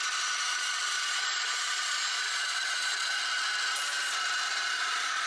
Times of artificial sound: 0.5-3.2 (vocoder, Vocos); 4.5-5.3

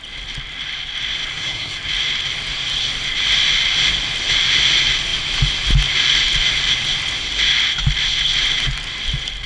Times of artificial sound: 1.3-1.8 (codec, SNAC)

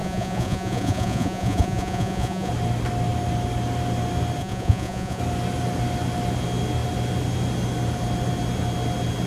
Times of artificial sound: 0.0-2.5 (vocoder, Vocos); 4.4-5.2